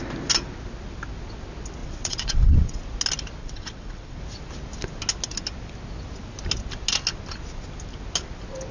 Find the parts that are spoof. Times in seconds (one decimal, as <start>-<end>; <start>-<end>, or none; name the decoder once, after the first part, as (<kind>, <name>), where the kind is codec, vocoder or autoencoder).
1.8-2.8 (vocoder, WaveNeXt); 3.4-4.2